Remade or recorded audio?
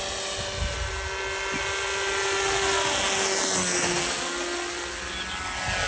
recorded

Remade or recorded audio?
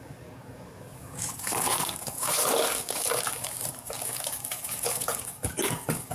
remade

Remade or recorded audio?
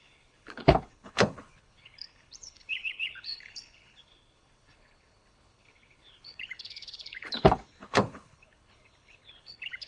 remade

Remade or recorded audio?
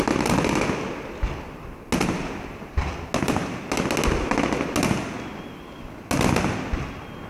recorded